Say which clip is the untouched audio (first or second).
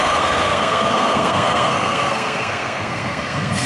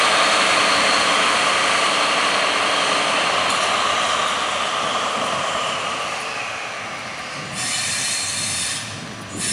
second